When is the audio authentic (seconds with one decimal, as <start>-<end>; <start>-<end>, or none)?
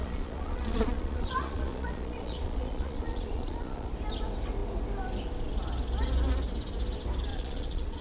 3.9-7.3